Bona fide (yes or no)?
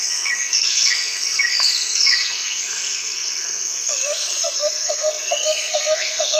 no